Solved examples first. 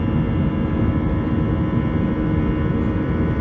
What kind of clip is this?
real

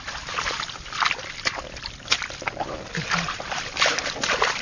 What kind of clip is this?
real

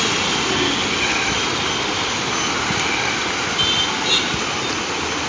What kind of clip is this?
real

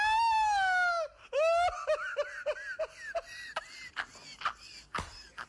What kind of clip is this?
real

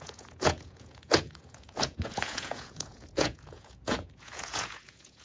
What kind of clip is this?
fake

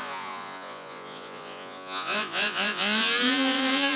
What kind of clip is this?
fake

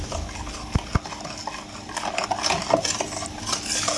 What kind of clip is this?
real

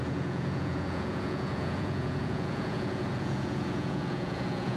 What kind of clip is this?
fake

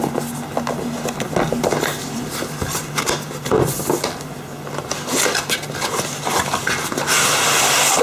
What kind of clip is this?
real